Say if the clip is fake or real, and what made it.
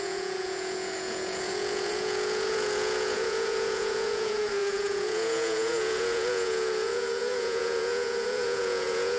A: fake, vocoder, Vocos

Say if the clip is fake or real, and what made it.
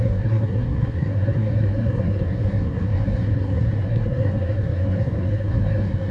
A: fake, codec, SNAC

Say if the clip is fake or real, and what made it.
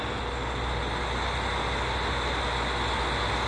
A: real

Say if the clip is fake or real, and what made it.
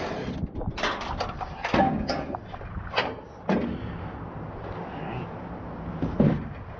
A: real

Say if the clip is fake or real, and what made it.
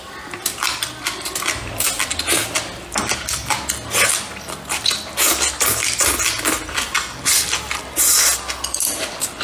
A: real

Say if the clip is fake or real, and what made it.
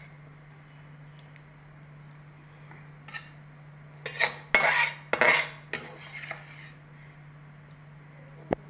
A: real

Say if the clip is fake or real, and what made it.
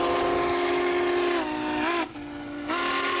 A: real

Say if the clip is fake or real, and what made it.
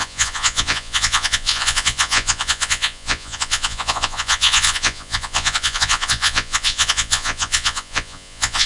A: fake, vocoder, Vocos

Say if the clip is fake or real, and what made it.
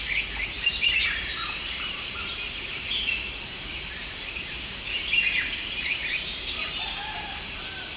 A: fake, vocoder, BigVGAN v2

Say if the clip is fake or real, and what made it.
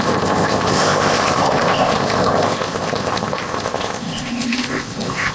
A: fake, codec, ZipCodec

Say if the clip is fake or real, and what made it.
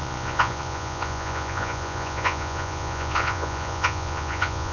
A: fake, vocoder, Vocos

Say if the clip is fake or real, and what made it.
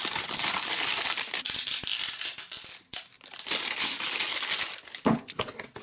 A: real